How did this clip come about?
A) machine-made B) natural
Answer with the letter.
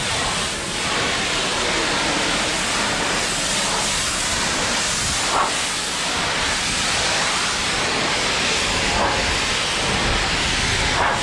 B